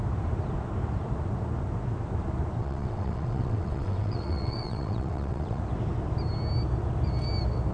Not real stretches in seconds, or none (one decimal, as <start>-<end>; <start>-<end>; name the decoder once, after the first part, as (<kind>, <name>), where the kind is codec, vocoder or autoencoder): 2.6-5.6 (vocoder, WaveNeXt)